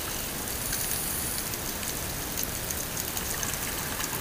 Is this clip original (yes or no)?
yes